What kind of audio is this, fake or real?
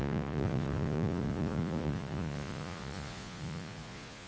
fake